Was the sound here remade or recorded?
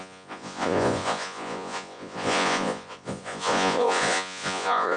remade